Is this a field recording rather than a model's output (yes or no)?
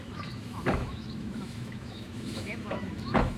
no